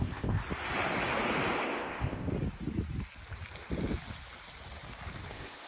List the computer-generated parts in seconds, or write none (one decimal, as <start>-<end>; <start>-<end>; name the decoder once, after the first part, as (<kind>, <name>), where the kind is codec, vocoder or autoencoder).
0.0-0.4 (codec, ZipCodec); 1.6-2.3; 5.3-5.7